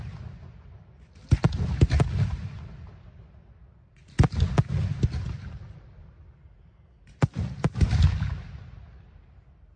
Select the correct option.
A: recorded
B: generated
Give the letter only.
A